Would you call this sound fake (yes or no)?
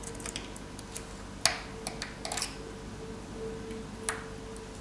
no